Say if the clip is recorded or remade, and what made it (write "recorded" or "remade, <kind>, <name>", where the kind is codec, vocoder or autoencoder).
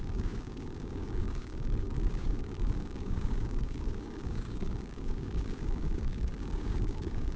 remade, codec, DAC